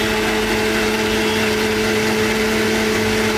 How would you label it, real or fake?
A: real